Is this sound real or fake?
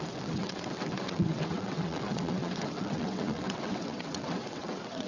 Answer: fake